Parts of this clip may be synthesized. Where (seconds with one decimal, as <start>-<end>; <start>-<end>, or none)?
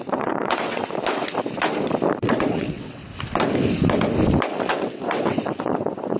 0.0-1.0; 2.2-3.0; 4.7-6.2